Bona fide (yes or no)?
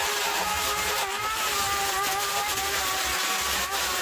yes